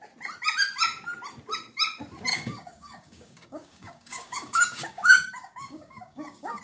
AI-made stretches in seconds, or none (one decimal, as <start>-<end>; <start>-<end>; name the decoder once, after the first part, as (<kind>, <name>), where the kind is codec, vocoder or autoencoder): 2.3-6.6 (codec, DAC)